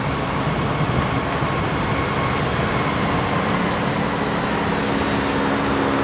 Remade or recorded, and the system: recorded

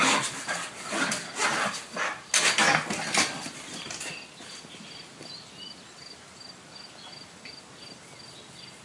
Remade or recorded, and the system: recorded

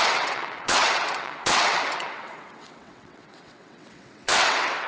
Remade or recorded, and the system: remade, vocoder, WaveNeXt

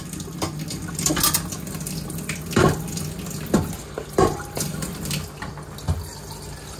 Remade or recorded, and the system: recorded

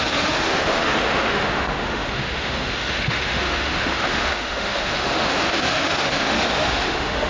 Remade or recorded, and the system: remade, autoencoder, DAC-VAE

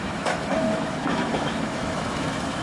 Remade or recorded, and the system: remade, autoencoder, DAC-VAE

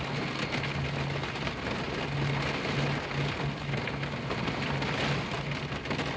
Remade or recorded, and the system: recorded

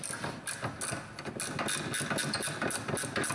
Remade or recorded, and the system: recorded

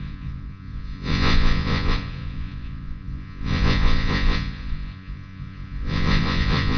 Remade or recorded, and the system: remade, vocoder, Vocos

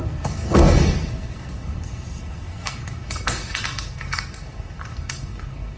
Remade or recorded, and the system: remade, codec, SNAC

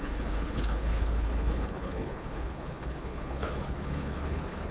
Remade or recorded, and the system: remade, codec, HILCodec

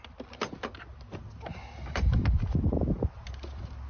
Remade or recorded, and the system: recorded